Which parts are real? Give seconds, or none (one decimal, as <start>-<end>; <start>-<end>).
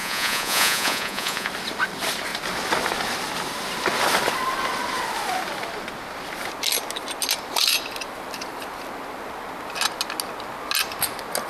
1.5-11.5